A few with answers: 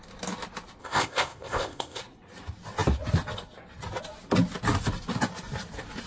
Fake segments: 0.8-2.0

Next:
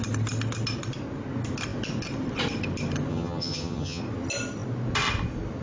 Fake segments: 3.1-4.0

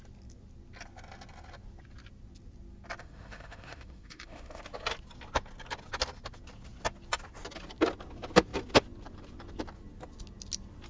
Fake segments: 3.0-4.6

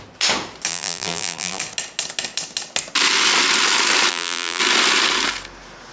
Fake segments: 0.7-1.6; 4.1-4.6

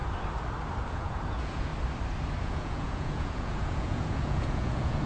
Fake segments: 0.9-1.7; 2.4-5.1

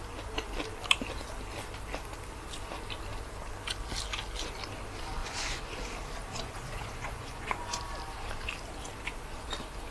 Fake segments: 5.2-5.8; 6.3-7.8

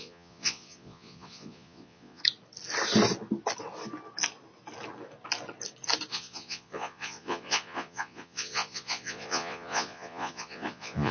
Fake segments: 0.0-2.2; 6.1-11.1

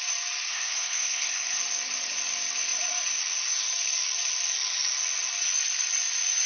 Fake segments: 0.5-1.6